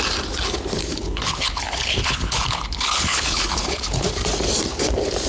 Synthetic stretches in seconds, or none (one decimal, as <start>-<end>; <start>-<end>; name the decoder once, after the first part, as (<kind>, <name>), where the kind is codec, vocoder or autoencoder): 0.9-4.1 (codec, HILCodec)